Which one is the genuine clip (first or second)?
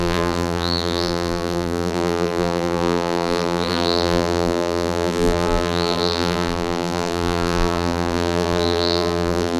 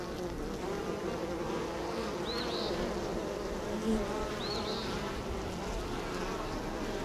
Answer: second